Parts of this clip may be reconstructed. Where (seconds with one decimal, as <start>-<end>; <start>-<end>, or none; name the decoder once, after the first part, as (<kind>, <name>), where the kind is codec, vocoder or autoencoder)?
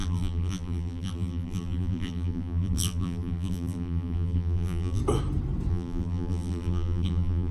0.0-5.0 (vocoder, BigVGAN v2); 5.7-7.5